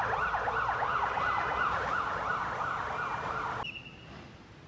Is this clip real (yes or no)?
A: yes